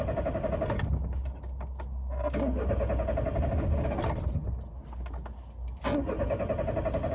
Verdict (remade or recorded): recorded